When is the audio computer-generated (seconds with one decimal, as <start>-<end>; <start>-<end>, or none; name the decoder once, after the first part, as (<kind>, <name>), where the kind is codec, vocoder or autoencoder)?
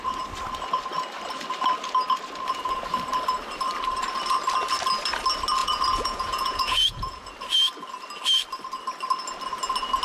5.6-7.3 (vocoder, Vocos)